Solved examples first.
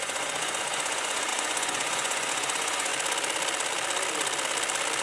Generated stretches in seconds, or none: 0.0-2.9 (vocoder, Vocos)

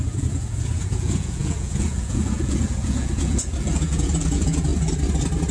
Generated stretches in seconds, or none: 0.0-4.7 (vocoder, Vocos)

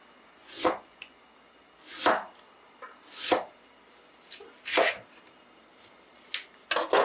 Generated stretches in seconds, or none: 0.4-1.2 (vocoder, Vocos)

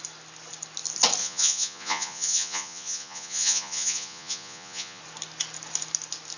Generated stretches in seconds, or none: 1.2-5.0 (vocoder, Vocos)

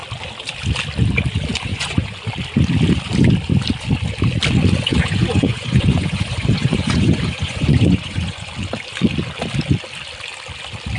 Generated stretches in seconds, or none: 1.7-2.2 (vocoder, Vocos); 4.9-8.5

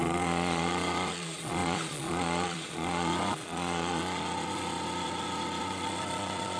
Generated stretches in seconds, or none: 0.0-6.6 (vocoder, Vocos)